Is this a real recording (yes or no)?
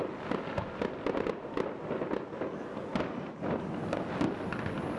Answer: yes